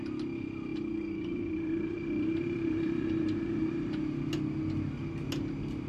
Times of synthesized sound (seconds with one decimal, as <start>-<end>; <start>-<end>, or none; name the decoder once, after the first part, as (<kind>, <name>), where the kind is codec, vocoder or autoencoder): 0.7-4.2 (vocoder, BigVGAN v2)